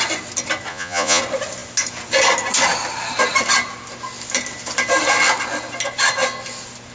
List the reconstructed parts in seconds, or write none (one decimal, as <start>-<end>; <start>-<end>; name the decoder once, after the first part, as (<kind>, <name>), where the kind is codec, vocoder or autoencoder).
0.7-1.2 (vocoder, Vocos)